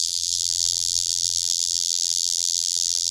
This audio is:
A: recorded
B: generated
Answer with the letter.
B